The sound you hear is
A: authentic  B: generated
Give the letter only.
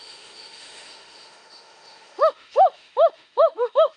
B